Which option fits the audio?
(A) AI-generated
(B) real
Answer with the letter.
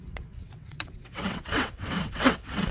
A